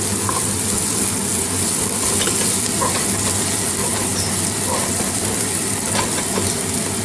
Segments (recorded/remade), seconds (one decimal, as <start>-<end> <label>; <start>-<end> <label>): 0.0-7.0 recorded

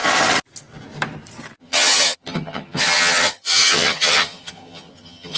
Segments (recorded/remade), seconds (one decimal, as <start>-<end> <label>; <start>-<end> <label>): 0.0-1.6 recorded; 1.6-5.4 remade

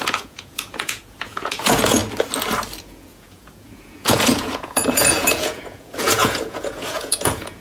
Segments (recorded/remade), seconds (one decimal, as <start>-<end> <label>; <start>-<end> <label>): 0.0-2.0 remade; 2.0-2.8 recorded; 2.8-7.6 remade

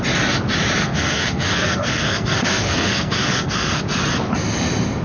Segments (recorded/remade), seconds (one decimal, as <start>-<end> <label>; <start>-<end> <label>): 0.0-0.8 recorded; 0.8-3.8 remade; 3.8-5.0 recorded

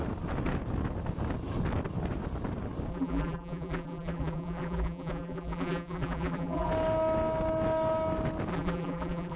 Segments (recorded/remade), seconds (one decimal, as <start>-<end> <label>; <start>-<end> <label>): 0.0-2.9 recorded; 2.9-6.7 remade; 6.7-8.5 recorded; 8.5-9.4 remade

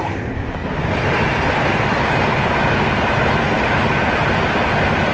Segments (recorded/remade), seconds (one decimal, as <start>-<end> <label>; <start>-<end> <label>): 0.0-5.1 recorded